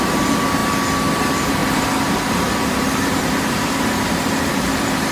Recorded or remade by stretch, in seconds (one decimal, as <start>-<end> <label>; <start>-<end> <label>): 0.0-0.6 remade; 0.6-1.2 recorded; 1.2-5.1 remade